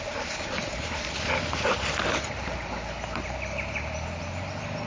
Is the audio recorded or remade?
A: remade